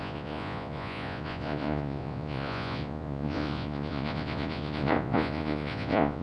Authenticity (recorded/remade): remade